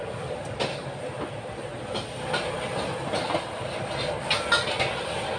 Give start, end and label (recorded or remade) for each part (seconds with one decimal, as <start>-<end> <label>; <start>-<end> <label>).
0.0-5.4 recorded

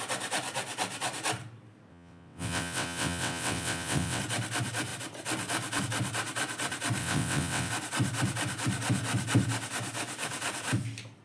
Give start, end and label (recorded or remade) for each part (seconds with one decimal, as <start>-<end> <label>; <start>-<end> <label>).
0.0-1.9 recorded; 1.9-4.2 remade; 4.2-7.0 recorded; 7.0-7.7 remade; 7.7-11.2 recorded

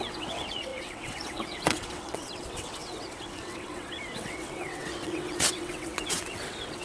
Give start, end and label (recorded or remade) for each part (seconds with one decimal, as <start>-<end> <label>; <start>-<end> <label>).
0.0-6.8 remade

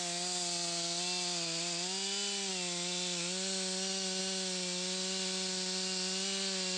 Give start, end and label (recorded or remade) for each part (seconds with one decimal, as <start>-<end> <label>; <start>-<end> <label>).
0.0-6.8 recorded

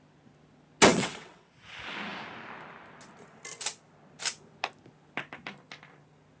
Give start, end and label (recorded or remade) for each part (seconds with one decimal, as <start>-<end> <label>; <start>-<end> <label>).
0.0-0.9 recorded; 0.9-1.5 remade; 1.5-6.4 recorded

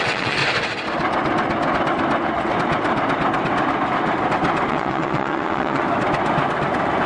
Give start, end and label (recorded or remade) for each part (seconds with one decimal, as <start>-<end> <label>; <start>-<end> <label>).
0.0-0.4 remade; 0.4-4.7 recorded; 4.7-5.8 remade; 5.8-7.1 recorded

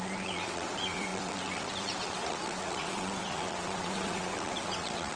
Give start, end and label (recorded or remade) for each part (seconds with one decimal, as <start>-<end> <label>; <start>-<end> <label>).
0.0-5.2 remade

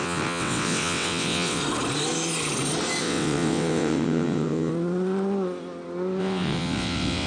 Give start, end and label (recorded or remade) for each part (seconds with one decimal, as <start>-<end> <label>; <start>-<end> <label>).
0.0-1.6 remade; 1.6-3.0 recorded; 3.0-4.7 remade; 4.7-6.2 recorded; 6.2-7.3 remade